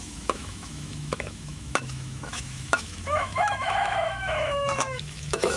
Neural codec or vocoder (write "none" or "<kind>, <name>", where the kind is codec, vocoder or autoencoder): autoencoder, DAC-VAE